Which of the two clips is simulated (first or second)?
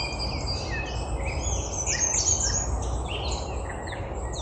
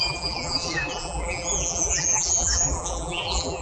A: second